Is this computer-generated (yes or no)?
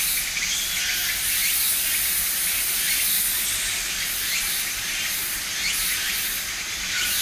no